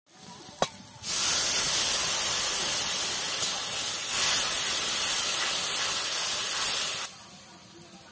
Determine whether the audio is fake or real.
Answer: real